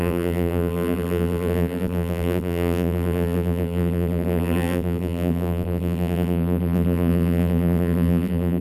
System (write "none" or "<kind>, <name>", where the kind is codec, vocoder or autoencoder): vocoder, BigVGAN v2